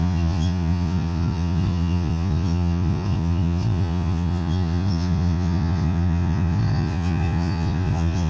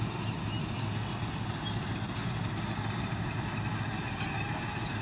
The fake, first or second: first